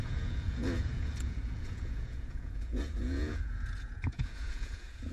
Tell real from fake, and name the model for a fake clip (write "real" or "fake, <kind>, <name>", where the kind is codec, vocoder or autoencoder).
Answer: fake, vocoder, Vocos